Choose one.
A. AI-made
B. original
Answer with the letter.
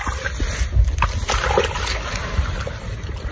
B